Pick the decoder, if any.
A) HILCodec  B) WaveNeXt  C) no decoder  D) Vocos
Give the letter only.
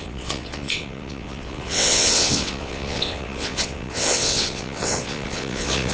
B